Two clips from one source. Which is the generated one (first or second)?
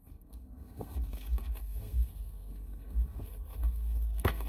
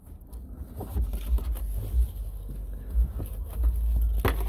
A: first